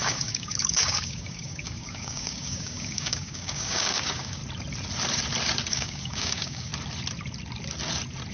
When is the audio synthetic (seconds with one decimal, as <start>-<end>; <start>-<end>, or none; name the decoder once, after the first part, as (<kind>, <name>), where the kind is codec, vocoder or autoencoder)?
0.0-4.4 (codec, DAC); 5.7-6.7